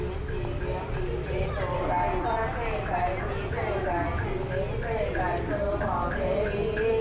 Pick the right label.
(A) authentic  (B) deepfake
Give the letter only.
A